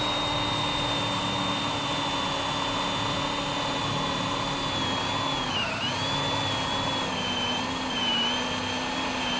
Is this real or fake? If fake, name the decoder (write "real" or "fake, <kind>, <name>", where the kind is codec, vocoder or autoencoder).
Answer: real